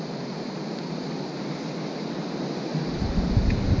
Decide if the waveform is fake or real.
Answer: real